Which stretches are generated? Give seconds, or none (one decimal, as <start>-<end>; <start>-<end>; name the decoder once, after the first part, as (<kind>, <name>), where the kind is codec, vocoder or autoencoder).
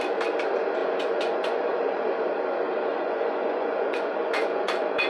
0.8-2.1 (vocoder, Vocos); 2.9-5.1